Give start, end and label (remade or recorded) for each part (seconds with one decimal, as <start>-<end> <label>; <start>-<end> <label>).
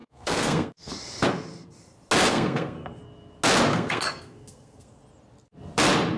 0.0-0.9 remade; 0.9-2.3 recorded; 2.3-3.0 remade; 3.0-3.7 recorded; 3.7-5.0 remade; 5.0-6.2 recorded